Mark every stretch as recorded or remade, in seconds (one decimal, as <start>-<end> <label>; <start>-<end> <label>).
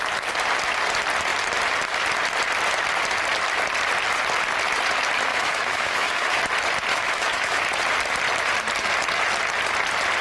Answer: 0.0-5.3 recorded; 5.3-6.4 remade; 6.4-6.9 recorded; 6.9-7.6 remade; 7.6-10.2 recorded